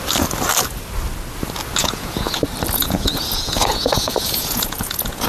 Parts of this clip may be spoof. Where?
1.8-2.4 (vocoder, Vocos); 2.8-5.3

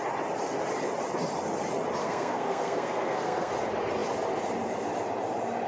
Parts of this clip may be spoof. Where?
2.0-3.5 (codec, SNAC)

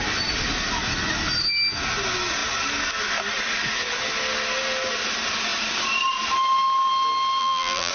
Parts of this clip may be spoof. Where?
7.4-7.9 (vocoder, BigVGAN v2)

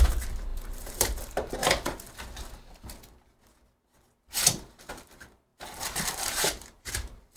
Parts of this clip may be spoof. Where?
0.0-1.6 (vocoder, BigVGAN v2); 4.9-7.4

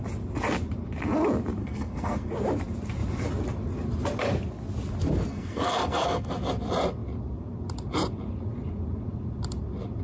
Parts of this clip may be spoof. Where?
1.6-2.3 (codec, SNAC); 5.3-6.3